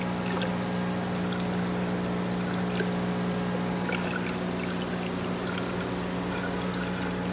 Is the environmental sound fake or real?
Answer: real